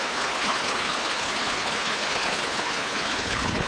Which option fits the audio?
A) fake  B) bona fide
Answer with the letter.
A